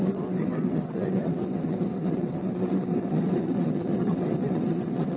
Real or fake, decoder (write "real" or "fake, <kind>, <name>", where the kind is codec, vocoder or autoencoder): fake, vocoder, WaveNeXt